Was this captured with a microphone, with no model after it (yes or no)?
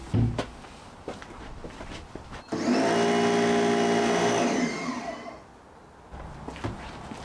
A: yes